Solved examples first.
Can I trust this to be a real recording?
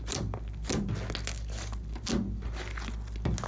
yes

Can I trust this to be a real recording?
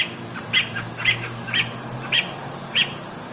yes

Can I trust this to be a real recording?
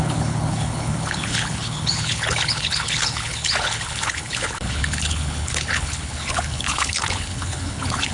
no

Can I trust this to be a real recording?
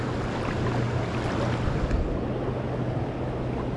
yes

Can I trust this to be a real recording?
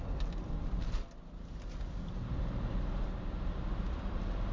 yes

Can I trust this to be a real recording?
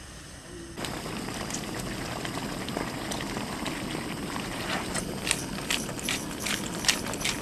yes